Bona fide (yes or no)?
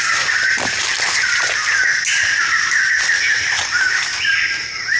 yes